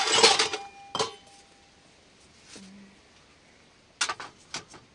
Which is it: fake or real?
real